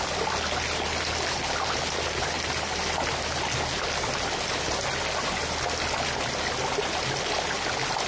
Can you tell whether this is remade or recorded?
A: recorded